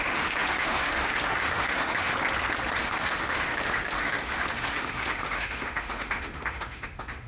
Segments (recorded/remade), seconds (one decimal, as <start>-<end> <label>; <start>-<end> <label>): 0.0-2.1 remade; 2.1-2.8 recorded; 2.8-7.3 remade